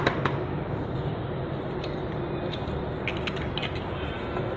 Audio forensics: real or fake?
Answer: real